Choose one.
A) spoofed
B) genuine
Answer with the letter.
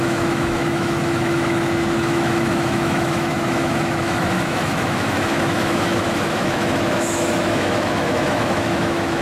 A